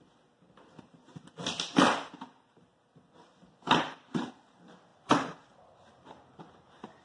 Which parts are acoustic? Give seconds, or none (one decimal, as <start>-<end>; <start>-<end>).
0.0-7.0